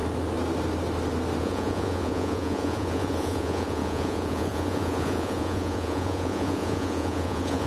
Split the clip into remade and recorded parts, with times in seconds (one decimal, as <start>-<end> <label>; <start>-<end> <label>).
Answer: 0.0-1.4 recorded; 1.4-7.7 remade